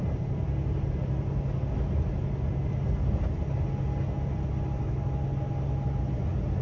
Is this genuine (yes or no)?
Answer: yes